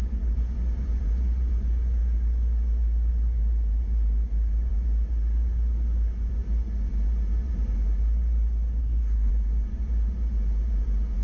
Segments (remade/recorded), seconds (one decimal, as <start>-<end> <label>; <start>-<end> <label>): 0.0-8.8 recorded; 8.8-9.3 remade; 9.3-11.2 recorded